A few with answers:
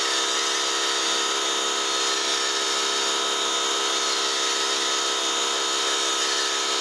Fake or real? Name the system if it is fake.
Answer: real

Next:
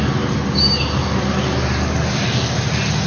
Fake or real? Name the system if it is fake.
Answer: real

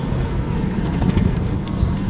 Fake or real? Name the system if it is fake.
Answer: fake, codec, SNAC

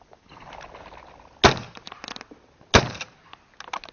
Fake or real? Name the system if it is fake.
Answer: real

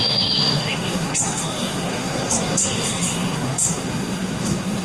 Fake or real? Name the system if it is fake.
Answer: fake, codec, SNAC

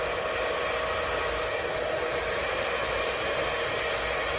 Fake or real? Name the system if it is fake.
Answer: real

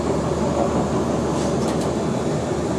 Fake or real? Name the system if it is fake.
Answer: real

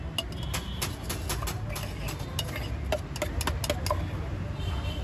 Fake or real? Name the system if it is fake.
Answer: real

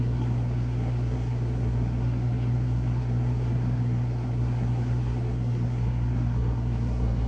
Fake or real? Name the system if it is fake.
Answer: fake, codec, SNAC